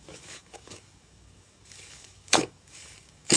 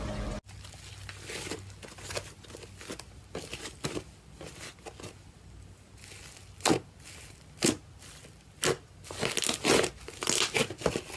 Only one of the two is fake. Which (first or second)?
first